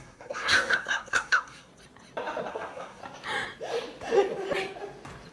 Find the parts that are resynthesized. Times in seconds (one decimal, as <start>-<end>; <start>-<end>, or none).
0.0-1.7; 2.5-3.0